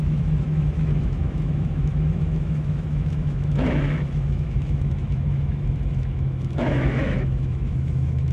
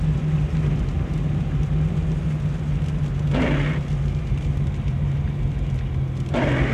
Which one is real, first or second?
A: second